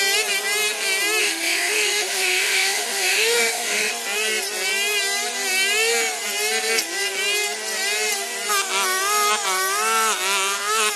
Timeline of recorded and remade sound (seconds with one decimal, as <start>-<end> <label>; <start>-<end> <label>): 0.0-1.2 recorded; 1.2-3.9 remade; 3.9-11.0 recorded